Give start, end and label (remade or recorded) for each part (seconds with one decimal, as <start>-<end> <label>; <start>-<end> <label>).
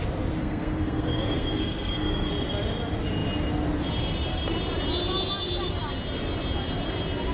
0.0-0.4 recorded; 0.4-2.3 remade; 2.3-7.3 recorded